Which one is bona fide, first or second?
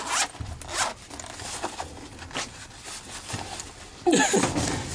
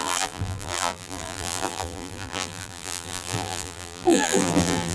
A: first